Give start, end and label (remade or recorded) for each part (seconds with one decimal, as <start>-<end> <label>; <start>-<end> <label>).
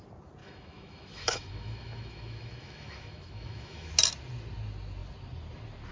0.0-0.4 recorded; 0.4-3.9 remade; 3.9-5.9 recorded